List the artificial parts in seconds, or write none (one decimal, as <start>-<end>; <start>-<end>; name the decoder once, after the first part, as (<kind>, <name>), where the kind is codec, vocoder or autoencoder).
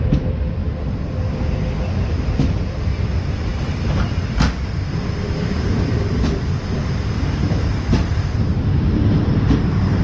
0.0-0.6 (vocoder, BigVGAN v2); 2.1-10.0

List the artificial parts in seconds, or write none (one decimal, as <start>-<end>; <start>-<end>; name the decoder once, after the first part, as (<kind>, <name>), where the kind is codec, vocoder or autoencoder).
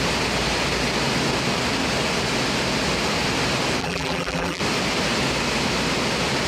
3.8-4.6 (vocoder, BigVGAN v2)